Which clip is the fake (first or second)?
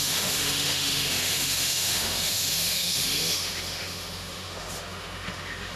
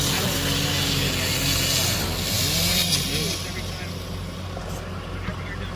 first